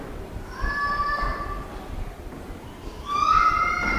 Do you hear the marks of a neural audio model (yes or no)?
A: no